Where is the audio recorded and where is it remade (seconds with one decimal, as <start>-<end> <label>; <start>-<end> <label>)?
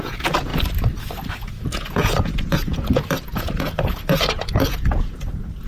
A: 0.0-0.5 remade; 0.5-1.3 recorded; 1.3-5.7 remade